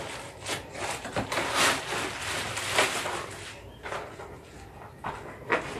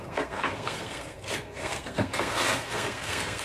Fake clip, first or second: second